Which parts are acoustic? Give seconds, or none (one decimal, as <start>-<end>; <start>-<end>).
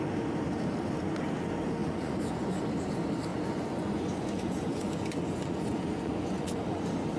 0.0-1.8; 2.6-3.3; 6.6-7.2